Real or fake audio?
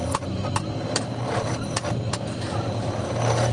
real